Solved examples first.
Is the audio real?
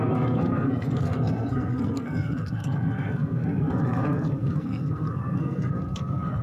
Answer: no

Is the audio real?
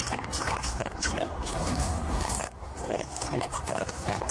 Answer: no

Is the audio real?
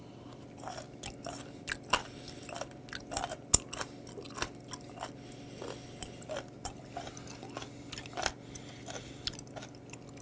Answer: yes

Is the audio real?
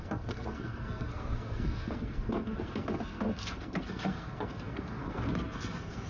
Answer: no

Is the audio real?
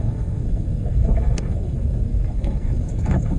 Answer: no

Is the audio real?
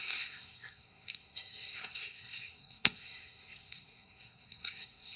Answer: no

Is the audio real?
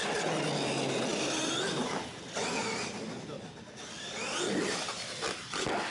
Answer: yes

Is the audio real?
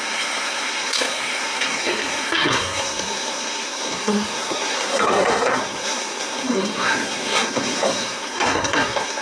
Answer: no